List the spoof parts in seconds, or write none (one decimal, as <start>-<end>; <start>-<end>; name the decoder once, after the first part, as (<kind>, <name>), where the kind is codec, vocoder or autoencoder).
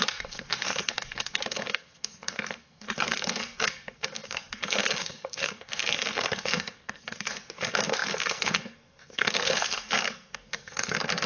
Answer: 0.0-11.3 (codec, SNAC)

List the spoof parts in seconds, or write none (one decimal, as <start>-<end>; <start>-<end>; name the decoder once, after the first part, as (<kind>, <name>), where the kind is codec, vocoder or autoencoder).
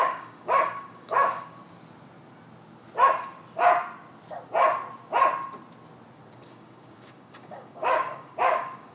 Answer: 0.0-1.6 (codec, DAC); 6.3-8.9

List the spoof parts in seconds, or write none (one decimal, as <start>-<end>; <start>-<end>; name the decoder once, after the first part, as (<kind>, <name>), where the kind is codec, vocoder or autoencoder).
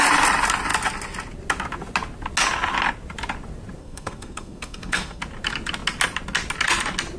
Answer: 3.8-5.2 (codec, SNAC)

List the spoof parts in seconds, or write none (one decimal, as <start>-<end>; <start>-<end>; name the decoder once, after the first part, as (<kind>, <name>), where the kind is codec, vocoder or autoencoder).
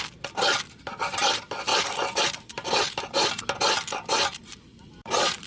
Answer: 1.7-3.1 (vocoder, BigVGAN v2); 4.7-5.5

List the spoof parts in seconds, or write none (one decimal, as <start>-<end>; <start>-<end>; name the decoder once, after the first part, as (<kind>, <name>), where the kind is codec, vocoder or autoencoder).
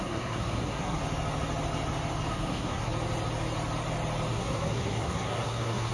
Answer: 0.0-1.0 (codec, SNAC); 2.3-2.9; 4.3-5.9